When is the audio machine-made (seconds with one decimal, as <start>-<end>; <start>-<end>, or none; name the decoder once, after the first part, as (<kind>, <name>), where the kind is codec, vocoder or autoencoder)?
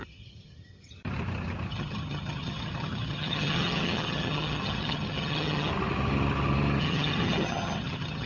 0.0-1.0 (vocoder, HiFi-GAN); 1.7-5.7; 6.8-8.3